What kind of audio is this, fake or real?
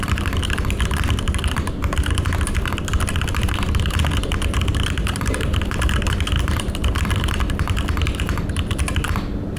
real